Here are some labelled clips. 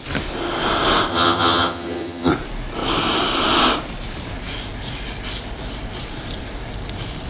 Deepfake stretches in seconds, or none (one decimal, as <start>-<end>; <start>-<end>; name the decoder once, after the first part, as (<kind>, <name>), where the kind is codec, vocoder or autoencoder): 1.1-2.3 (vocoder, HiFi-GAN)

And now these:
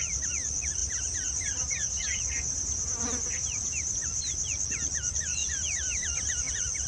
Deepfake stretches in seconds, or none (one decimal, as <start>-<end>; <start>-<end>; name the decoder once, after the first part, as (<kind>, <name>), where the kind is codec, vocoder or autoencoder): 0.8-4.0 (vocoder, BigVGAN v2); 5.4-6.5

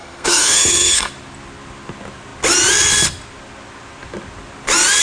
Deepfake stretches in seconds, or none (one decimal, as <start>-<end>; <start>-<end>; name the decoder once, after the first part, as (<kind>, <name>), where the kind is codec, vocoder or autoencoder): 0.0-1.1 (codec, SNAC)

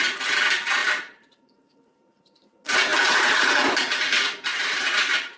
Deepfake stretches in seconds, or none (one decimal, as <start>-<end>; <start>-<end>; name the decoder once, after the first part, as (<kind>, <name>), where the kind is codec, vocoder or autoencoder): 0.8-1.4 (vocoder, BigVGAN v2); 4.5-5.4

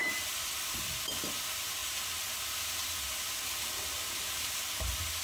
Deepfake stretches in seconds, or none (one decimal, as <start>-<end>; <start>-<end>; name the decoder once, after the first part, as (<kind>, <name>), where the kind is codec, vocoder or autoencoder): 0.0-0.8 (vocoder, BigVGAN v2); 1.8-4.1

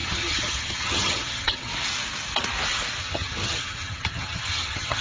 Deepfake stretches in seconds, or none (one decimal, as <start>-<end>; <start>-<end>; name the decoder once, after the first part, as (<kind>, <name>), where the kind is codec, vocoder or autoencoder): 0.0-1.7 (vocoder, HiFi-GAN); 3.0-5.0

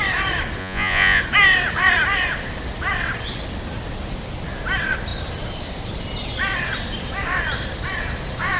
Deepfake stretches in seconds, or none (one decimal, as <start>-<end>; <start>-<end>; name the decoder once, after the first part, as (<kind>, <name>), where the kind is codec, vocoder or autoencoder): 0.6-1.2 (vocoder, Vocos)